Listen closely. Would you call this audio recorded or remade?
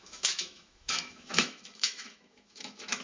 remade